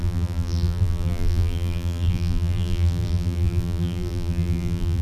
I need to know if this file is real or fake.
fake